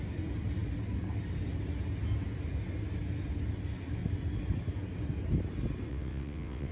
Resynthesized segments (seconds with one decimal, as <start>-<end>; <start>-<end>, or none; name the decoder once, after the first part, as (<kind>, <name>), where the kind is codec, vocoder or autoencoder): 5.9-6.7 (vocoder, WaveNeXt)